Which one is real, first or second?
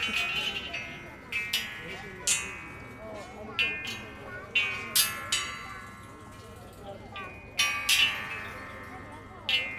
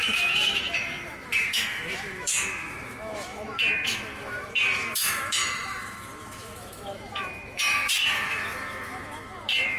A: first